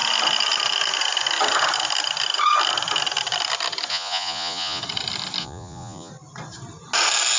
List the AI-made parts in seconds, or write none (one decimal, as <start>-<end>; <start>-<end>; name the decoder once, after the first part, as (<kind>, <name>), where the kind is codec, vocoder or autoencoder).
3.9-4.8 (vocoder, Vocos); 5.4-6.1

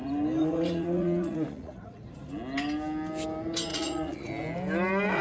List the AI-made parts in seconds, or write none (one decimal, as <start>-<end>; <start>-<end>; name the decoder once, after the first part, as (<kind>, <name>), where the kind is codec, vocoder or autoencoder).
0.4-2.0 (vocoder, Vocos); 3.7-4.3

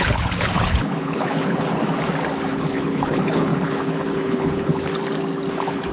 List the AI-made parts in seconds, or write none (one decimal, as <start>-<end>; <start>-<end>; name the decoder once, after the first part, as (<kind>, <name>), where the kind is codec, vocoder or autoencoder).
0.0-1.8 (codec, HILCodec); 2.5-4.9; 5.5-5.9

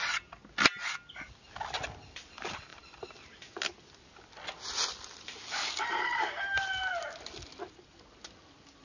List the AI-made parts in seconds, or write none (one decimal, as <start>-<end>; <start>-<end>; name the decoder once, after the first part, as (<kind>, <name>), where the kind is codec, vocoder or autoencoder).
none